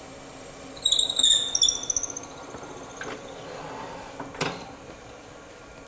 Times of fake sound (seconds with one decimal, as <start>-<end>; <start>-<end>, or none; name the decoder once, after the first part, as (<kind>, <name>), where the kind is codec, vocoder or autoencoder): none